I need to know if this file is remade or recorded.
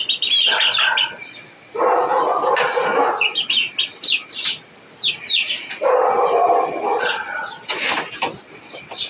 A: recorded